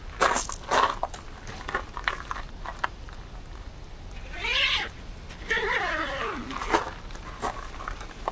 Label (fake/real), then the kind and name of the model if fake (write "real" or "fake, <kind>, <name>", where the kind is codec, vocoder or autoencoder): real